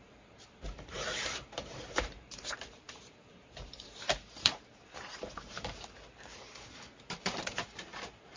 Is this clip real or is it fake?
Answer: fake